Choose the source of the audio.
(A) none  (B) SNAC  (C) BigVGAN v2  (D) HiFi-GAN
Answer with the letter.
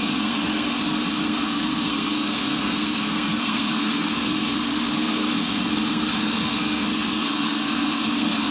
B